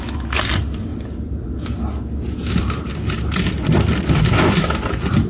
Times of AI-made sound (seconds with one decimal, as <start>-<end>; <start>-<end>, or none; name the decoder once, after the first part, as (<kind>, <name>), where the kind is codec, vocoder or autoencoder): none